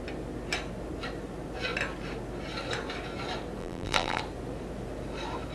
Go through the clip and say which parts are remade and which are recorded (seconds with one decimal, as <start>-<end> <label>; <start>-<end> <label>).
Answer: 0.0-3.6 recorded; 3.6-4.2 remade; 4.2-5.5 recorded